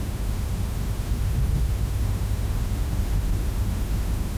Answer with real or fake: fake